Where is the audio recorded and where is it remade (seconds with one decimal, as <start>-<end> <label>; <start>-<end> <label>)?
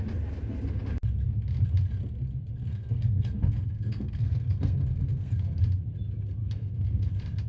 0.0-2.7 recorded; 2.7-5.6 remade; 5.6-6.4 recorded; 6.4-7.1 remade; 7.1-7.5 recorded